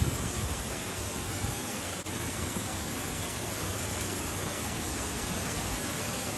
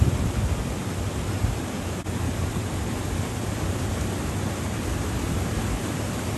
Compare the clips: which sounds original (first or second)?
second